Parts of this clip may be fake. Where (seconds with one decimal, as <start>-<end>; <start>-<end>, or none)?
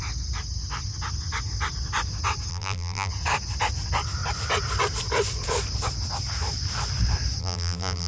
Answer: 2.5-3.1; 7.4-8.1